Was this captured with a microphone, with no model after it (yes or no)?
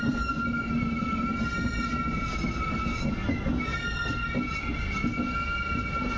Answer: yes